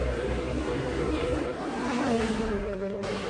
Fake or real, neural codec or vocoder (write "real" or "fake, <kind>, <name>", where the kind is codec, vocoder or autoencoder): fake, codec, SNAC